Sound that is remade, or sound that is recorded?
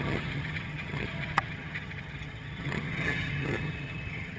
remade